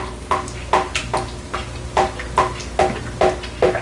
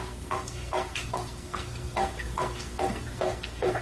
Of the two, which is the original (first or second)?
first